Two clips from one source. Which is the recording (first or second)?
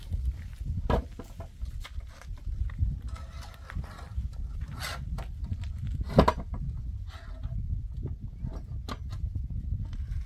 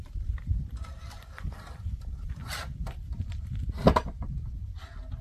first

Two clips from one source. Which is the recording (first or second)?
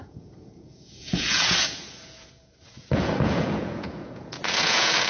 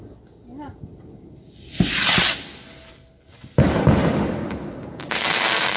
second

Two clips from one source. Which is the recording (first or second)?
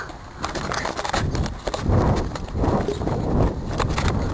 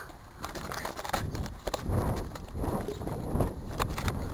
first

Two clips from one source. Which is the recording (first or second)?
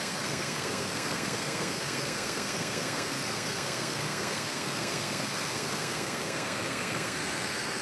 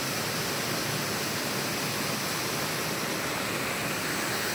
second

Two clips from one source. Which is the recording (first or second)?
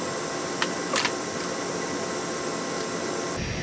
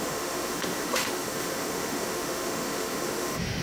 first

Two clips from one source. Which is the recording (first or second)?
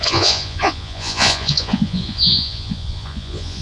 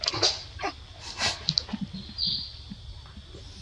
second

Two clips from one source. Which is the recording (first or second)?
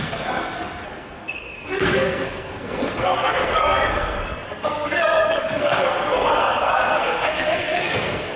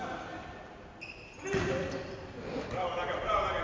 second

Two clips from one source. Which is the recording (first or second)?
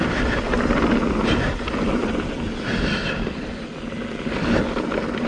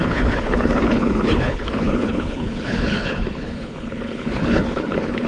first